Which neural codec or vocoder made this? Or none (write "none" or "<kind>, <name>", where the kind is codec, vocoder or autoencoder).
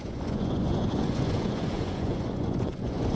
vocoder, Vocos